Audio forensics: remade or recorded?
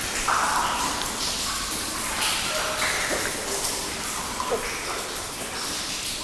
recorded